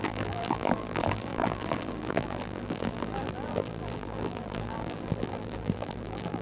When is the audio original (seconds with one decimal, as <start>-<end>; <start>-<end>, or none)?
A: none